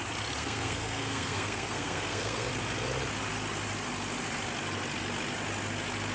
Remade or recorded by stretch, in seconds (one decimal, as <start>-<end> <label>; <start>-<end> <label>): 0.0-0.4 recorded; 0.4-2.5 remade; 2.5-6.1 recorded